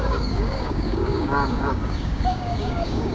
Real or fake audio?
fake